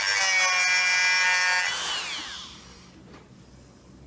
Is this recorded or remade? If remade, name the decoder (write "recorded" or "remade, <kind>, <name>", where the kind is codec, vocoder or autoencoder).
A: recorded